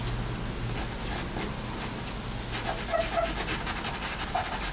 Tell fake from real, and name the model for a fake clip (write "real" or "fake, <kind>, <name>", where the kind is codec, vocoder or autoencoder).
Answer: real